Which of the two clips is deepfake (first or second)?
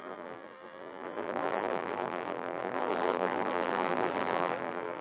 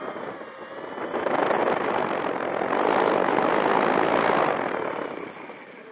first